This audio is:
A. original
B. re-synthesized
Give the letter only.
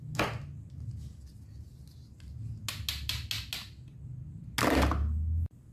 A